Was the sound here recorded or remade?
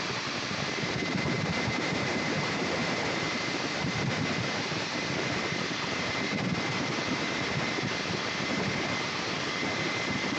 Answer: remade